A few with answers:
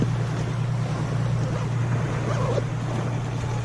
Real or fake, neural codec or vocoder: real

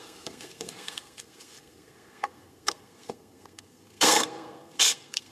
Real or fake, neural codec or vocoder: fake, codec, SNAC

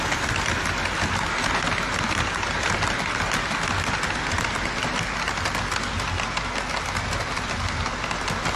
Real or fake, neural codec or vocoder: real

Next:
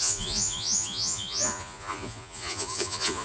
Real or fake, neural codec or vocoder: fake, vocoder, Vocos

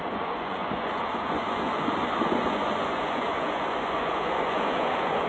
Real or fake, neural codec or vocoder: fake, vocoder, Vocos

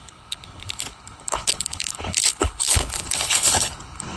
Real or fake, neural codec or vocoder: fake, codec, HILCodec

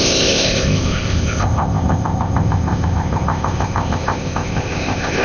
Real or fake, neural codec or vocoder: fake, codec, ZipCodec